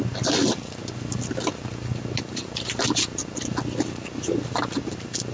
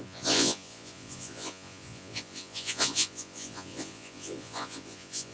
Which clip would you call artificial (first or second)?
second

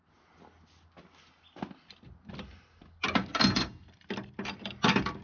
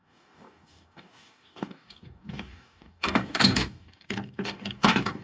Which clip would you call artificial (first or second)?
second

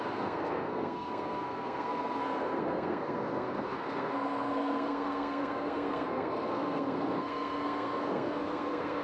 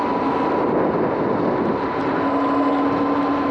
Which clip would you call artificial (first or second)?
first